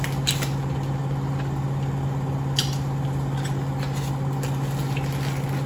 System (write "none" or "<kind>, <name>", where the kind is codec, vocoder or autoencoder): none